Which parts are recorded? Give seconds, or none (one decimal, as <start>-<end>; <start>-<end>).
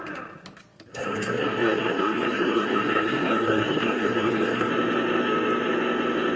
0.0-0.9; 4.7-6.4